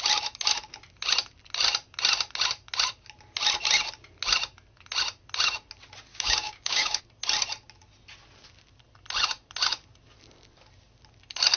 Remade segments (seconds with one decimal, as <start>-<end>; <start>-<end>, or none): 6.1-7.0